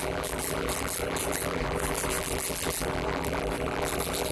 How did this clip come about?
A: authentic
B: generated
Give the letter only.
B